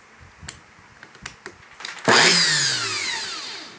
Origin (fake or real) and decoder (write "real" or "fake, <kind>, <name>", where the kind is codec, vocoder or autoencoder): real